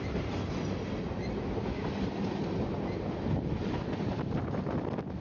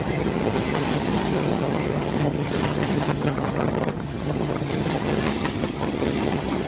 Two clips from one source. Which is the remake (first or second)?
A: second